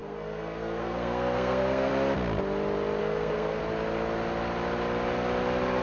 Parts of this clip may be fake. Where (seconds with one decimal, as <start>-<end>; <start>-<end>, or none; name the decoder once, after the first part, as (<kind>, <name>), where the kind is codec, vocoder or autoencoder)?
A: 0.0-1.9 (codec, SNAC); 3.0-3.6